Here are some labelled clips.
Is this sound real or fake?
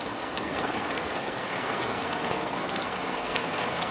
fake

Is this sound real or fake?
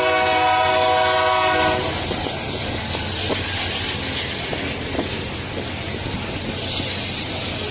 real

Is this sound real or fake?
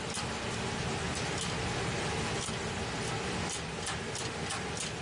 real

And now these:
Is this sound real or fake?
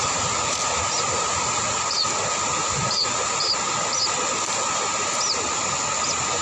real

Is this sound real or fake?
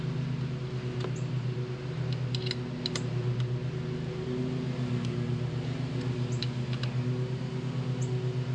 real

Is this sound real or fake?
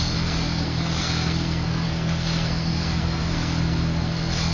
fake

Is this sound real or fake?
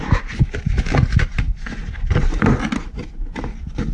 real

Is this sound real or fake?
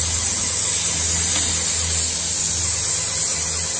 real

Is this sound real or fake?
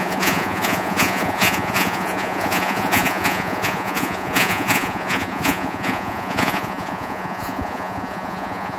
fake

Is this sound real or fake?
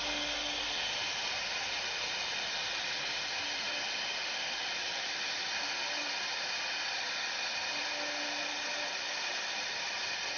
real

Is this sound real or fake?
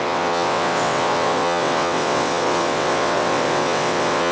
fake